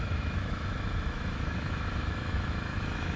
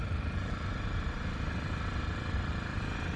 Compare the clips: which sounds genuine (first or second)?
second